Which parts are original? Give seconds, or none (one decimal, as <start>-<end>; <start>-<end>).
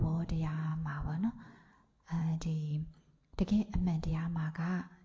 0.0-0.7; 1.3-5.0